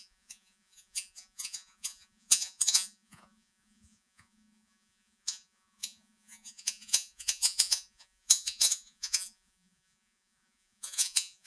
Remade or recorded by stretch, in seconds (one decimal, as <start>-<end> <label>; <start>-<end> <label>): 0.0-11.5 remade